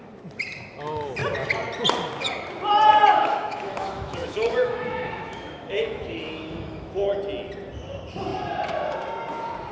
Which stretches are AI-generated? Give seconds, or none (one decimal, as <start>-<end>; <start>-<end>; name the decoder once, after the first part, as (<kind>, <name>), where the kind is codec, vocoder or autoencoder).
3.1-7.2 (autoencoder, DAC-VAE)